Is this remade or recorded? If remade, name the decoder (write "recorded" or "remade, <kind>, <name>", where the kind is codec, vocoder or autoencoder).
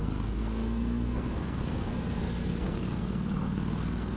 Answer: remade, codec, SNAC